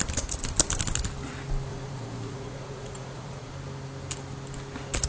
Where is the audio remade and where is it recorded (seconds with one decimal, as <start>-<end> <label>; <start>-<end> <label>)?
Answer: 0.0-1.7 recorded; 1.7-3.5 remade; 3.5-5.1 recorded